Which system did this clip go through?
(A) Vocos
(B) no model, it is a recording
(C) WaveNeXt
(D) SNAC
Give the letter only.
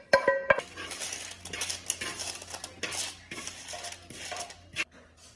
B